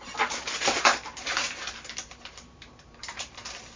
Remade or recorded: remade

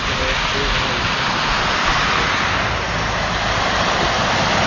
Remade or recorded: recorded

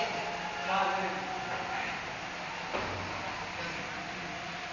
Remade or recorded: recorded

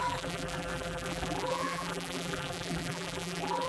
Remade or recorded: remade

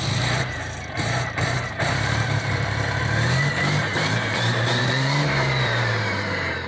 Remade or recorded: remade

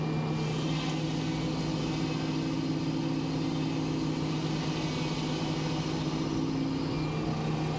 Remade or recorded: recorded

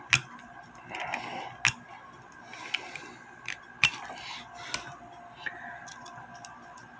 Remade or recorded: recorded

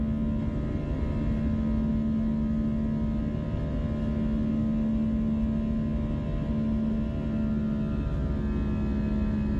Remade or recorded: recorded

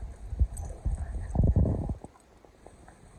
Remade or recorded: recorded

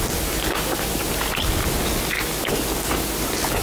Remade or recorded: recorded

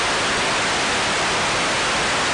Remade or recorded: recorded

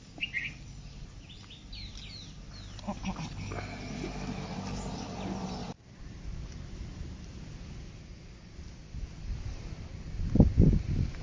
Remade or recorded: recorded